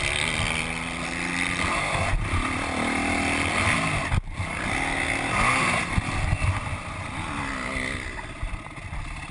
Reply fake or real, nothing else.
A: real